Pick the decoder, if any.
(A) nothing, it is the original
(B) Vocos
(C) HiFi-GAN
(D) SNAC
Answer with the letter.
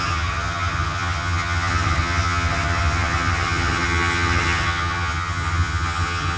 C